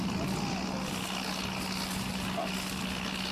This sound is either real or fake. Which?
real